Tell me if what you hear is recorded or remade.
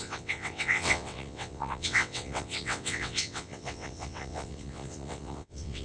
remade